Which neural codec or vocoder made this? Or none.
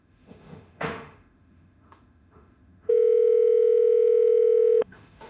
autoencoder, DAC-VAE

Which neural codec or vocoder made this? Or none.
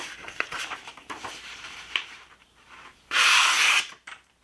vocoder, BigVGAN v2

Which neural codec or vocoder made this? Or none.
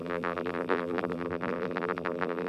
vocoder, BigVGAN v2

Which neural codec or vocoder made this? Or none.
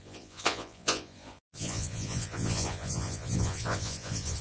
vocoder, Vocos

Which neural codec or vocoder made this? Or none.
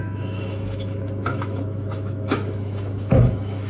autoencoder, DAC-VAE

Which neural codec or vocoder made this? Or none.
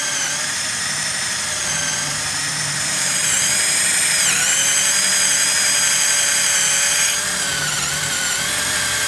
vocoder, BigVGAN v2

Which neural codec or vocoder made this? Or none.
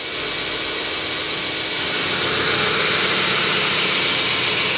none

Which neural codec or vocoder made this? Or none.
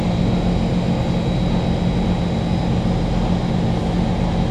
none